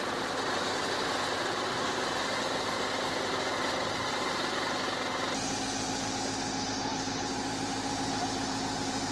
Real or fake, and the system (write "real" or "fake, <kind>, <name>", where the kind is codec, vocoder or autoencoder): real